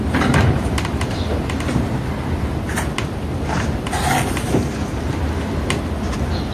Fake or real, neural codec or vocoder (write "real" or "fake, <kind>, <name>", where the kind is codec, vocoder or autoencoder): real